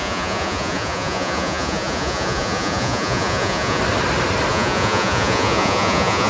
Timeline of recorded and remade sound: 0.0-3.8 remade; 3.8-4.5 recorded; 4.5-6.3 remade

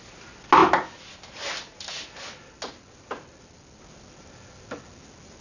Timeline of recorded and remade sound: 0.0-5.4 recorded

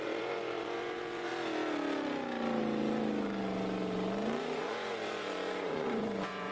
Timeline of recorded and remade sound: 0.0-1.3 remade; 1.3-4.4 recorded; 4.4-6.5 remade

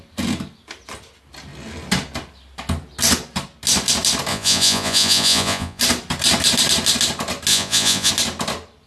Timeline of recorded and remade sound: 0.0-4.3 recorded; 4.3-5.8 remade; 5.8-7.5 recorded; 7.5-8.1 remade; 8.1-8.9 recorded